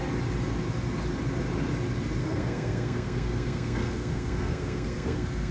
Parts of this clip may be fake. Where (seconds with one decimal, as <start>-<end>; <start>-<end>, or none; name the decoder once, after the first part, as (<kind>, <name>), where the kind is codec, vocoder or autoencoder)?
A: 2.2-5.5 (codec, SNAC)